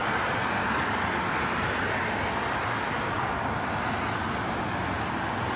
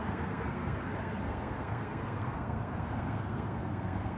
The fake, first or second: second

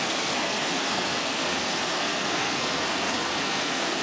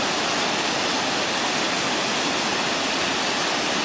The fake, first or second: first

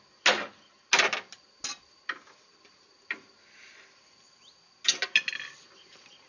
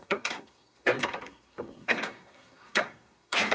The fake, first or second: second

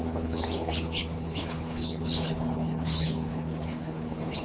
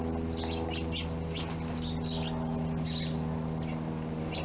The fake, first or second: first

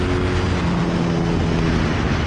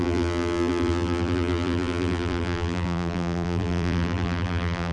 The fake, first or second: second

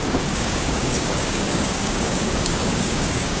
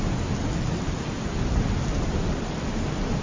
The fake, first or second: first